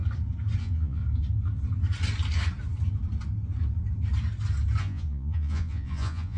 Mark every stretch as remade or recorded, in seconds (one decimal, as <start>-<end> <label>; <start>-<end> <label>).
0.0-0.6 recorded; 0.6-1.0 remade; 1.0-4.8 recorded; 4.8-6.4 remade